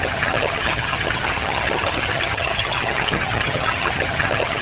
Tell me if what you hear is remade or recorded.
remade